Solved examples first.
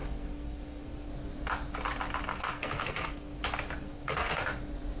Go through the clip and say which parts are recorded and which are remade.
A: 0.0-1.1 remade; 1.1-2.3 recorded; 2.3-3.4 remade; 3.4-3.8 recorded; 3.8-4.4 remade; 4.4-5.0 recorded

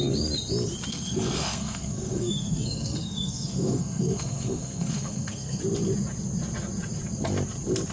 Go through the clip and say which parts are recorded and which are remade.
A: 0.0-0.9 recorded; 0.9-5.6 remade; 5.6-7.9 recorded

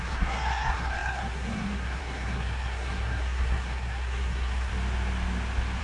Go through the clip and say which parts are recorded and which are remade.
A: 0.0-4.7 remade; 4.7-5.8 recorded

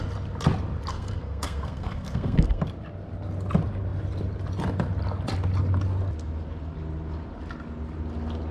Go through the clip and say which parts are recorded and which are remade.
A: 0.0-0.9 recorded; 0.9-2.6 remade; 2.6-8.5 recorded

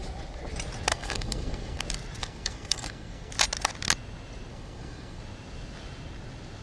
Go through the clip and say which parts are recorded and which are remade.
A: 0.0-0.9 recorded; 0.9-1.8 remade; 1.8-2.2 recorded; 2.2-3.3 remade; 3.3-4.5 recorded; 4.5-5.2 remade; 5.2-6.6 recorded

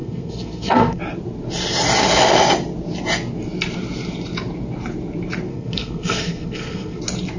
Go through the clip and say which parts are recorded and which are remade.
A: 0.0-1.0 remade; 1.0-5.5 recorded; 5.5-7.0 remade; 7.0-7.4 recorded